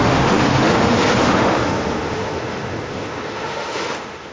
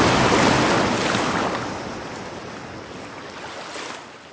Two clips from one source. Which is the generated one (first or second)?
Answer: first